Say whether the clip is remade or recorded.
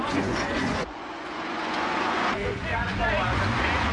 remade